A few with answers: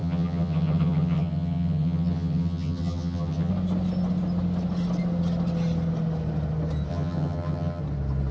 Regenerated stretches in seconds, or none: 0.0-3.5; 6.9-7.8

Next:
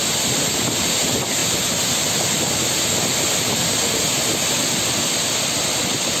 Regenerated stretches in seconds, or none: none

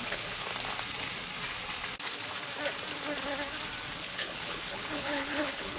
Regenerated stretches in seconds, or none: 0.0-0.5; 4.0-5.8